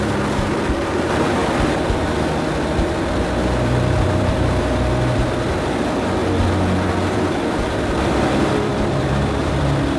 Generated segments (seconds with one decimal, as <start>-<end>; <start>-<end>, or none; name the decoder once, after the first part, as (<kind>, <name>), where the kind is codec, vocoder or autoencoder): 0.0-6.2 (vocoder, BigVGAN v2); 6.9-10.0